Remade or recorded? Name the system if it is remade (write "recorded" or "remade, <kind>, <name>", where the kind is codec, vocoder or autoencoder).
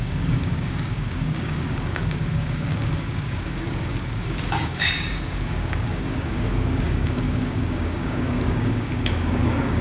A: remade, codec, DAC